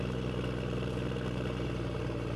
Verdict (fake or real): fake